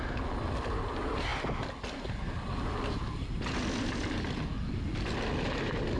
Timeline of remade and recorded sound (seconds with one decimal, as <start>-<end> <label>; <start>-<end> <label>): 0.0-6.0 recorded